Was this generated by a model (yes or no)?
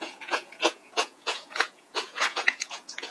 yes